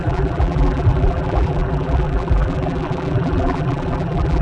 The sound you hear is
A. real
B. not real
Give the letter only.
B